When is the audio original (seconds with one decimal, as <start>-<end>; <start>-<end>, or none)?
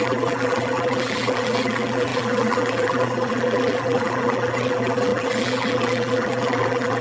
none